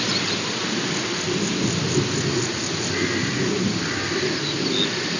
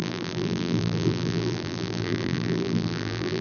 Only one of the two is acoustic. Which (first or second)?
first